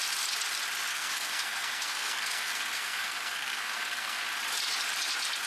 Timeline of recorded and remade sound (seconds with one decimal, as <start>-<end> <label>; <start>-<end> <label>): 0.0-0.9 recorded; 0.9-4.2 remade; 4.2-5.5 recorded